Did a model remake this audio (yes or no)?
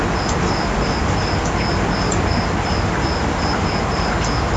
no